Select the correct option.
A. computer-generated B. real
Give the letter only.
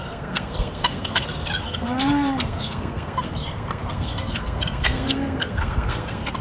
A